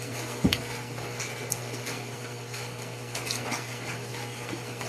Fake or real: fake